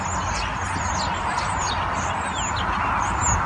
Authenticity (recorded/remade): recorded